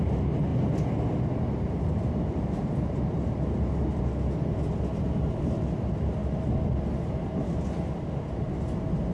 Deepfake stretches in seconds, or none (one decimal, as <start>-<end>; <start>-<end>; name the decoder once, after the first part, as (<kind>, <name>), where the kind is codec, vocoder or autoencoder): none